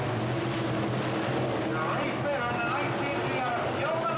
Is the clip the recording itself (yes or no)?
yes